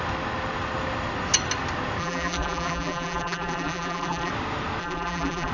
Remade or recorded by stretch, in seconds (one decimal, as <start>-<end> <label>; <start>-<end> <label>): 0.0-2.0 recorded; 2.0-4.3 remade; 4.3-4.8 recorded; 4.8-5.5 remade